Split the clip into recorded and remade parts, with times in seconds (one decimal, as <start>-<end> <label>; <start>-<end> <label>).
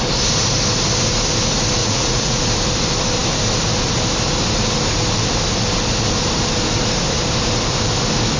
0.0-1.8 recorded; 1.8-2.4 remade; 2.4-8.4 recorded